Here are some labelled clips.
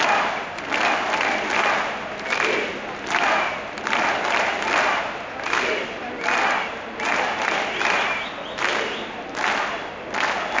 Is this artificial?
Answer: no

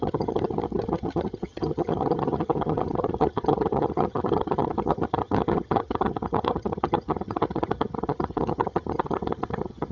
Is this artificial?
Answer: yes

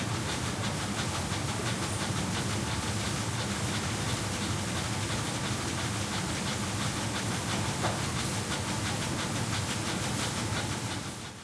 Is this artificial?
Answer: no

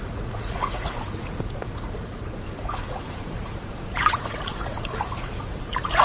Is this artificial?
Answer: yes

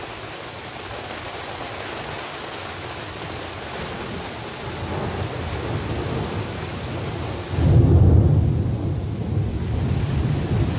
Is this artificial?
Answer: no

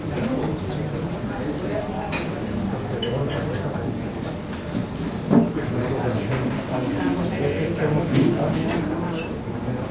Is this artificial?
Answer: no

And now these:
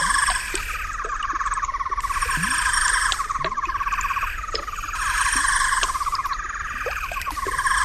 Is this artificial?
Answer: no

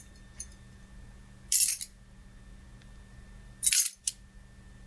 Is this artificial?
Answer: no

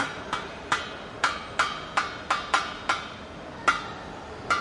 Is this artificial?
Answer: no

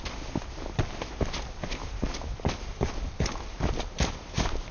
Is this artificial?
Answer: no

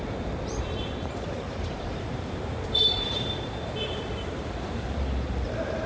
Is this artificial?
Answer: yes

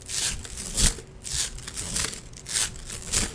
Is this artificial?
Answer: no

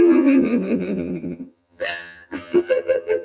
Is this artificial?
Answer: yes